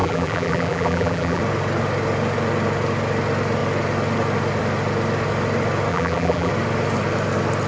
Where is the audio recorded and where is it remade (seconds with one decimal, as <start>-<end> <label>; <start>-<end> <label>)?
0.0-1.4 remade; 1.4-5.9 recorded; 5.9-6.5 remade; 6.5-7.7 recorded